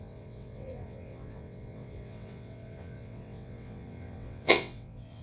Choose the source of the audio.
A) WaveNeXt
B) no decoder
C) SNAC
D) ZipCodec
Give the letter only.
A